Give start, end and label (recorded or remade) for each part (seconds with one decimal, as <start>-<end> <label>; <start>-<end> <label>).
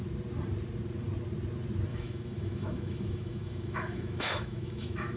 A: 0.0-1.9 recorded; 1.9-5.2 remade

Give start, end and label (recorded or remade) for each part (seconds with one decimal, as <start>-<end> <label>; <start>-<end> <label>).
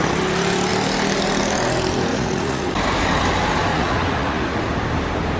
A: 0.0-2.1 recorded; 2.1-2.7 remade; 2.7-3.7 recorded; 3.7-4.6 remade; 4.6-5.4 recorded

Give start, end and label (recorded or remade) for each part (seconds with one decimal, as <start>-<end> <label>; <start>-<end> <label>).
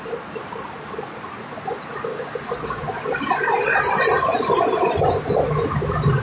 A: 0.0-2.1 recorded; 2.1-2.8 remade; 2.8-6.2 recorded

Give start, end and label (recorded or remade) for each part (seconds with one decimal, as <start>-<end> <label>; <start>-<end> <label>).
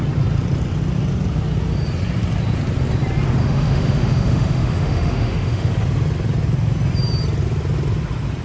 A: 0.0-3.4 recorded; 3.4-5.7 remade; 5.7-8.4 recorded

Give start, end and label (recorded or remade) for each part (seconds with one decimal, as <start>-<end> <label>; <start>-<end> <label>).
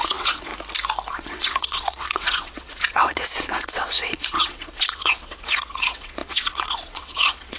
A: 0.0-0.5 remade; 0.5-1.1 recorded; 1.1-7.6 remade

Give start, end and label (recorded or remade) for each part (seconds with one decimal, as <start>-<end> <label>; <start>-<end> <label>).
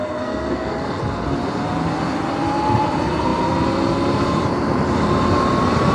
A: 0.0-1.0 remade; 1.0-5.9 recorded